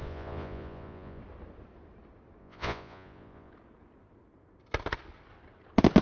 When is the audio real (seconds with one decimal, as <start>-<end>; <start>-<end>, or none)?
1.2-2.4; 3.5-6.0